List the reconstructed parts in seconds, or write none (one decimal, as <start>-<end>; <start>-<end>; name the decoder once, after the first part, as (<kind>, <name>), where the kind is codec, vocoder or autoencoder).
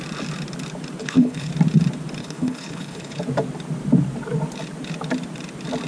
1.0-1.5 (codec, HILCodec); 2.2-3.2